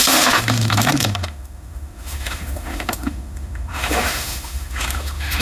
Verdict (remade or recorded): remade